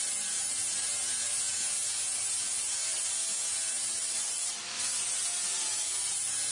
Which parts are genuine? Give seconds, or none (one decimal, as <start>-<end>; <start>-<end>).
0.6-3.7; 4.6-6.0